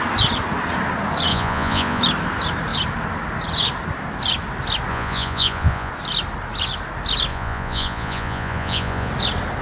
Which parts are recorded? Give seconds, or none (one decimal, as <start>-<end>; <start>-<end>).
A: 0.0-1.3; 2.0-4.9; 5.9-7.3; 9.1-9.6